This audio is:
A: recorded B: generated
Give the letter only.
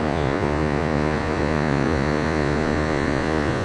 B